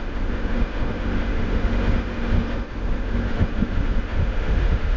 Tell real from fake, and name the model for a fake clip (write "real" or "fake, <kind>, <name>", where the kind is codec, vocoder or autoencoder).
fake, autoencoder, DAC-VAE